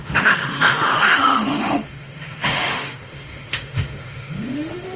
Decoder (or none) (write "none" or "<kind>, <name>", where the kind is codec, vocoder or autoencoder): autoencoder, DAC-VAE